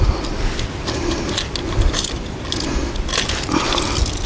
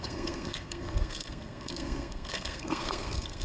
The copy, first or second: second